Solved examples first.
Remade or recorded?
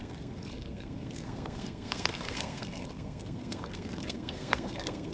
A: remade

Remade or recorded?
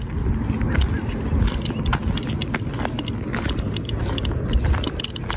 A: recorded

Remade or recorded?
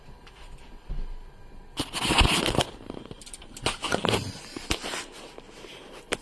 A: recorded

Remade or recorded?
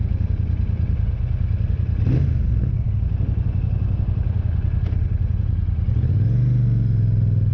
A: recorded